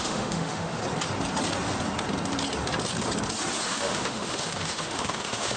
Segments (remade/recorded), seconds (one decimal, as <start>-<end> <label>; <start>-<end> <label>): 0.0-0.8 remade; 0.8-3.7 recorded; 3.7-5.6 remade